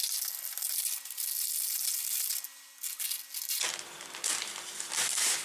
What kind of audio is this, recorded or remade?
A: recorded